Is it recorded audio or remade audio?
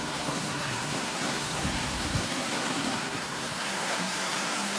remade